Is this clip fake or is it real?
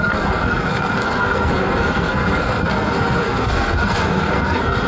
fake